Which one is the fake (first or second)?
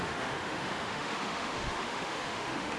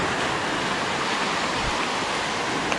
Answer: first